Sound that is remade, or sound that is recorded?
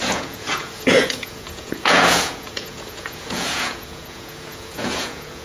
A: remade